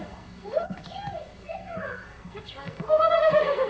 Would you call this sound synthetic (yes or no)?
yes